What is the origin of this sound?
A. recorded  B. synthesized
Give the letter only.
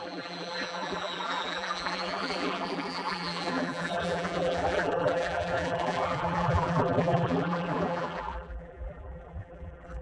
B